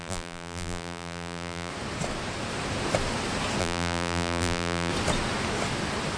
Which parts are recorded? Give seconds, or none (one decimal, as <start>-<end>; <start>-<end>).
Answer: 1.7-3.6; 4.9-6.2